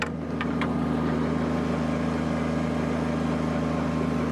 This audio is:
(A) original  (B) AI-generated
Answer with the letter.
A